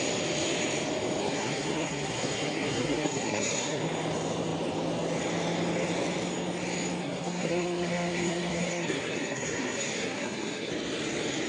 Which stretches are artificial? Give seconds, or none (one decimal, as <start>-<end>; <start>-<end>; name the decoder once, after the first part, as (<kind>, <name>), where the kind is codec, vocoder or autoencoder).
1.2-3.8 (codec, SNAC); 7.0-10.7